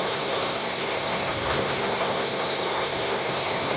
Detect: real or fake fake